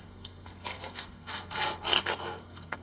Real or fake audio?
fake